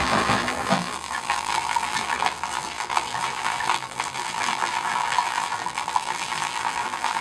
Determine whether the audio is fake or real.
fake